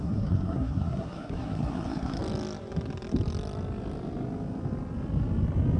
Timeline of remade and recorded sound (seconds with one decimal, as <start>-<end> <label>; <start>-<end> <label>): 0.0-2.2 remade; 2.2-5.8 recorded